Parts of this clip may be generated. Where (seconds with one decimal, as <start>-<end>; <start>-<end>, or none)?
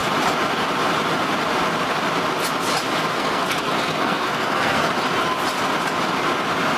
3.1-4.9